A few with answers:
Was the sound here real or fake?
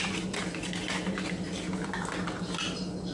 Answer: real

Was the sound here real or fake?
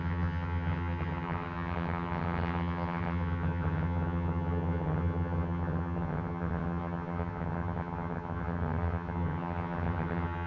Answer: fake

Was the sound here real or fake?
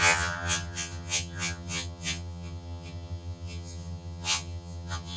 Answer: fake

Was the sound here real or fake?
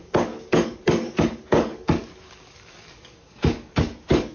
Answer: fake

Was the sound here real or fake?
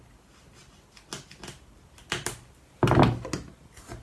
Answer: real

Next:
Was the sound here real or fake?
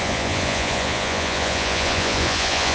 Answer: fake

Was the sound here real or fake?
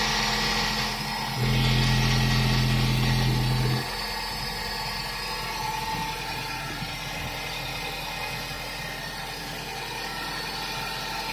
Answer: real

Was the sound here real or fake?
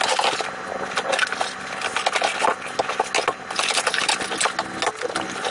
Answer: real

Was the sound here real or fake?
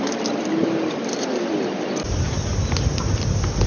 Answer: real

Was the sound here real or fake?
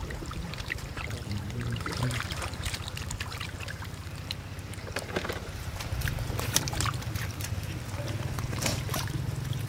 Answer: fake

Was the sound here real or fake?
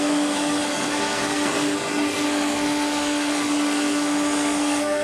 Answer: fake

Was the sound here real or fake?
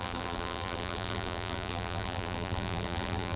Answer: fake